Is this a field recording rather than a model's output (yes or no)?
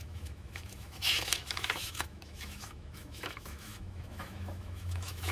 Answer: no